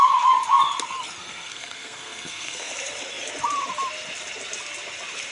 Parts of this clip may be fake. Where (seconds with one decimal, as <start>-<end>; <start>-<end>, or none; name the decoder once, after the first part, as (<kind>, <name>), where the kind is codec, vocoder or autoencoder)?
1.2-2.7 (codec, SNAC)